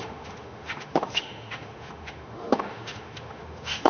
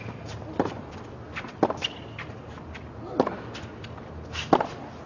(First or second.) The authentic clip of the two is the second